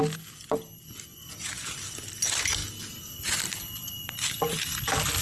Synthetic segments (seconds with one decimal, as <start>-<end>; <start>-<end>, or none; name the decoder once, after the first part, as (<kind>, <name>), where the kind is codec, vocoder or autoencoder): none